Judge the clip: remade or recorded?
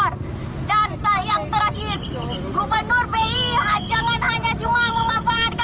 recorded